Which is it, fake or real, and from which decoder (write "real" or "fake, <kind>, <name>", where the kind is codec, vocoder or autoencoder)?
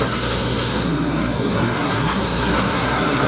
fake, codec, SNAC